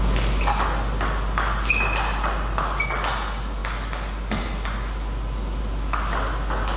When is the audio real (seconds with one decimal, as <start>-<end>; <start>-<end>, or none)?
0.0-6.8